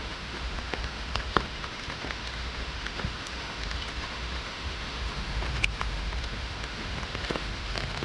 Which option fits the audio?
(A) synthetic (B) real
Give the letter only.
A